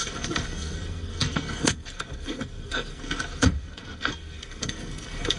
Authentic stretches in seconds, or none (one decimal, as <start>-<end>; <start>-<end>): none